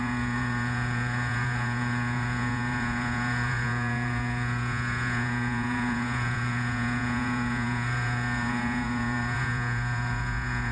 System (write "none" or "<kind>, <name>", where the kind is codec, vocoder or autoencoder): vocoder, Vocos